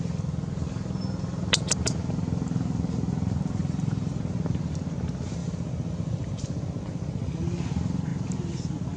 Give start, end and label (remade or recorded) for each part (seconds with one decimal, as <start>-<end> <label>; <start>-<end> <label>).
0.0-3.6 recorded; 3.6-4.2 remade; 4.2-5.4 recorded; 5.4-6.4 remade; 6.4-9.0 recorded